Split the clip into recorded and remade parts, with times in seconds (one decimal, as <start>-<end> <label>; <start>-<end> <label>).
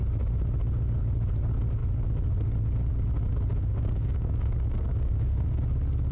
0.0-3.6 recorded; 3.6-5.6 remade; 5.6-6.1 recorded